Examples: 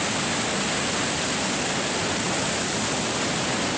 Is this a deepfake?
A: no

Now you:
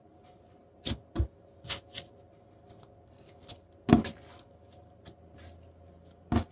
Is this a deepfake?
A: no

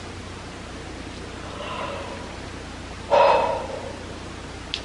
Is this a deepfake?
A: no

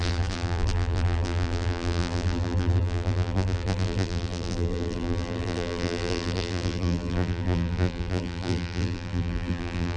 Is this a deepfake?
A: yes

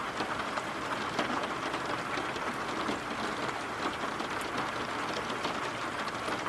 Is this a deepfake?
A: no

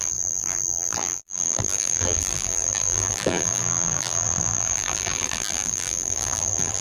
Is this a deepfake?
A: yes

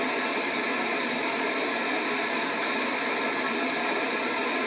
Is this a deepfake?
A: no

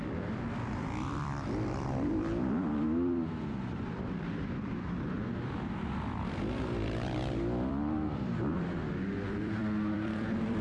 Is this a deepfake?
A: yes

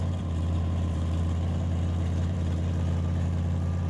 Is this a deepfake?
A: yes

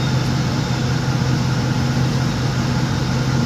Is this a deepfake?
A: no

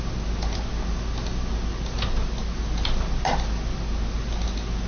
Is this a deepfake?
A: no